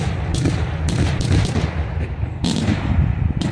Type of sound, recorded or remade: recorded